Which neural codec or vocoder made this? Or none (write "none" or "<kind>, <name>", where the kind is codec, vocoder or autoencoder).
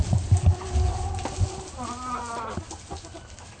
none